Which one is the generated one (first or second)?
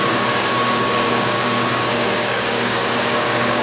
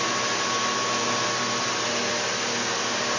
first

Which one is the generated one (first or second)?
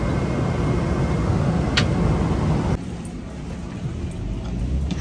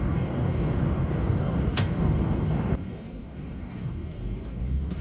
second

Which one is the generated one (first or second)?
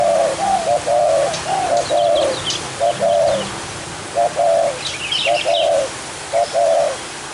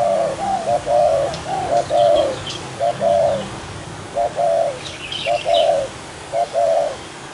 second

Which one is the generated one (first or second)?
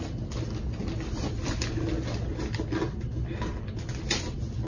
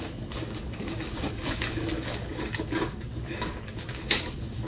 second